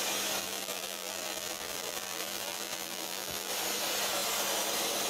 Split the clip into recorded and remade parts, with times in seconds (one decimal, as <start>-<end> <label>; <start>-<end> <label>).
0.0-0.4 recorded; 0.4-3.5 remade; 3.5-5.1 recorded